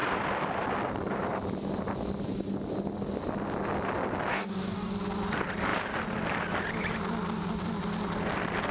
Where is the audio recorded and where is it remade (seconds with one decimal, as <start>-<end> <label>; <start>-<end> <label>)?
0.0-4.3 recorded; 4.3-4.9 remade; 4.9-8.7 recorded

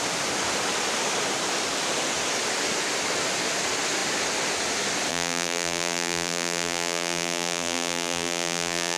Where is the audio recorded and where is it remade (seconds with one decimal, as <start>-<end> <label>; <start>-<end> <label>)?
0.0-5.1 recorded; 5.1-9.0 remade

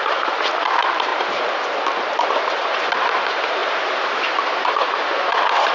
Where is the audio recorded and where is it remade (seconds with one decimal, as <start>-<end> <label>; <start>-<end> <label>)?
0.0-5.7 remade

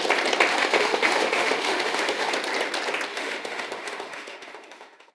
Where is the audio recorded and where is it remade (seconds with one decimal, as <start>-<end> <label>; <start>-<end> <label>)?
0.0-0.5 recorded; 0.5-2.3 remade; 2.3-3.1 recorded; 3.1-5.1 remade